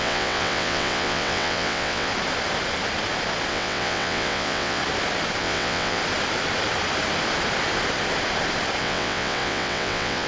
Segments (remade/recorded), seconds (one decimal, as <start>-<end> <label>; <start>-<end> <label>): 0.0-2.1 remade; 2.1-3.5 recorded; 3.5-4.8 remade; 4.8-5.4 recorded; 5.4-6.0 remade; 6.0-8.8 recorded; 8.8-10.3 remade